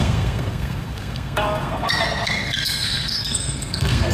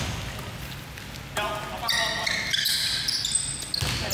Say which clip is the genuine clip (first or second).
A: second